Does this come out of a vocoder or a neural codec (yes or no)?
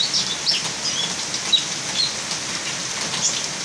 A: no